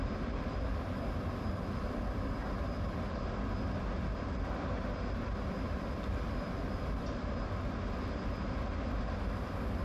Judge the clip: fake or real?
real